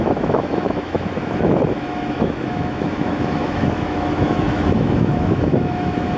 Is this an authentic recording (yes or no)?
no